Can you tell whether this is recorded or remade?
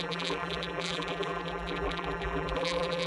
remade